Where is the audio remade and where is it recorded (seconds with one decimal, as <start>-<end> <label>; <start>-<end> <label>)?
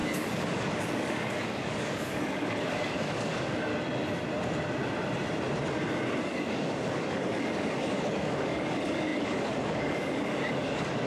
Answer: 0.0-3.7 remade; 3.7-6.2 recorded; 6.2-11.1 remade